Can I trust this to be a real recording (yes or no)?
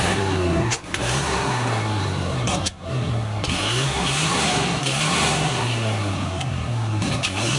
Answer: no